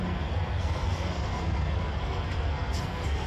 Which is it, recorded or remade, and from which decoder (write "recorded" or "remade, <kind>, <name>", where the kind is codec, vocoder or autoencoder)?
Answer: remade, codec, SNAC